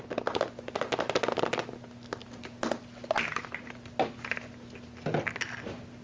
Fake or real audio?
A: real